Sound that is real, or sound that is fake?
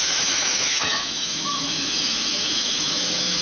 fake